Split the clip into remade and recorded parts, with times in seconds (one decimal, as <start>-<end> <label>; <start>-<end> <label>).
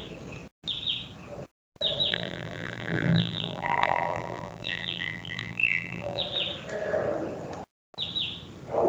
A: 0.0-2.1 recorded; 2.1-6.2 remade; 6.2-8.9 recorded